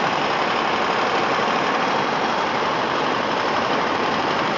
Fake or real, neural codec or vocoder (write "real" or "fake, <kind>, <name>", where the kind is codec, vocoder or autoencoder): real